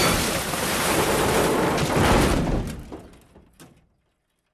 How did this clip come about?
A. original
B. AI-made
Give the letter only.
A